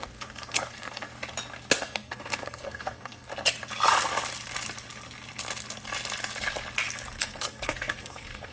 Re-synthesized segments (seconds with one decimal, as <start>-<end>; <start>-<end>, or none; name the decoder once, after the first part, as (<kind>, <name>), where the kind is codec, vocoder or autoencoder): 0.0-1.1 (codec, SNAC); 1.8-3.3; 7.2-8.5